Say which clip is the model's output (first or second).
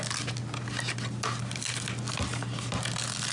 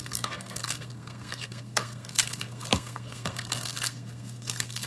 second